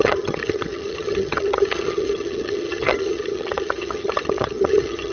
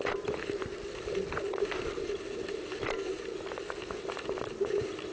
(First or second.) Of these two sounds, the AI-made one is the first